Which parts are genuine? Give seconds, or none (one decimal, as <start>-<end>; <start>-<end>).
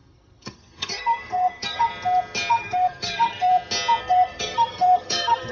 1.9-2.5; 3.5-4.0